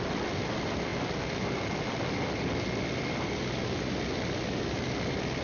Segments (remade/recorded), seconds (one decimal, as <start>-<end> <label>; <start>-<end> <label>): 0.0-5.4 recorded